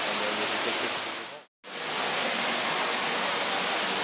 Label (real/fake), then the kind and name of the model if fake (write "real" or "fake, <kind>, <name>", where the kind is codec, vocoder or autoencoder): real